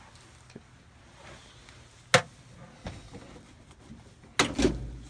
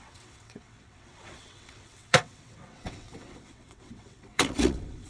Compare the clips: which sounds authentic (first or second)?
first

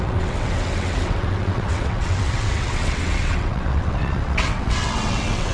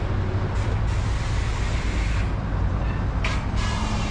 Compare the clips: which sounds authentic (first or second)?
second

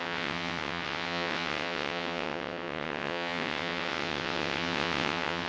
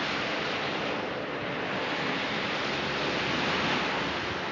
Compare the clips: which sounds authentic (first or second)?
second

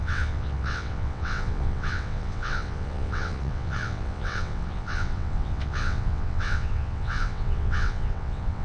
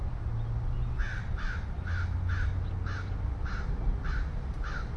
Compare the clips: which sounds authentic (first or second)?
second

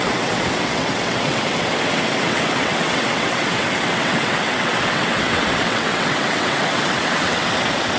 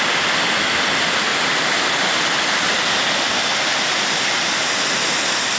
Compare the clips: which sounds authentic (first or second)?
second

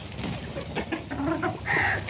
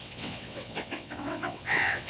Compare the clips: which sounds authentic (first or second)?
first